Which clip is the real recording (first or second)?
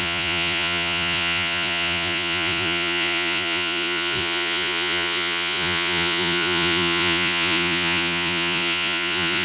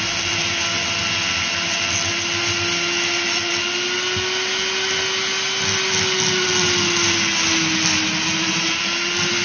second